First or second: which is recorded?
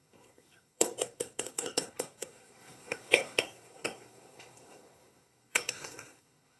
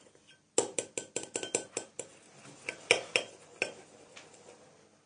second